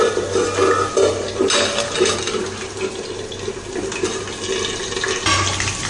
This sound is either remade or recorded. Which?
recorded